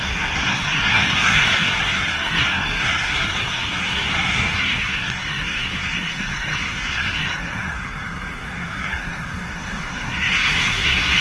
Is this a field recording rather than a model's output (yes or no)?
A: no